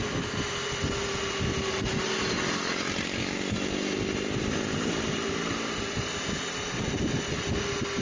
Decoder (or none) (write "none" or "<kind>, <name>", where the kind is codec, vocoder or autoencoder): none